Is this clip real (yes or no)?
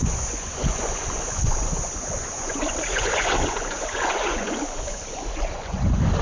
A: no